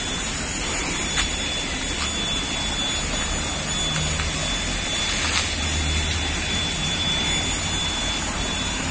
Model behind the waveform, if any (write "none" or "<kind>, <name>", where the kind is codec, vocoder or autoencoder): none